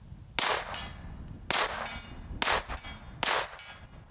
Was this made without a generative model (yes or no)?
yes